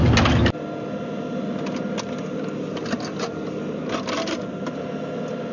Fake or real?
real